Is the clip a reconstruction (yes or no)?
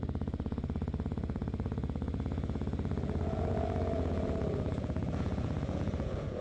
yes